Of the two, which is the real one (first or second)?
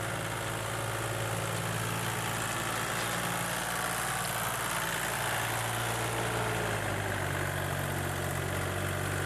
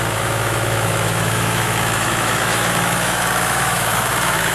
first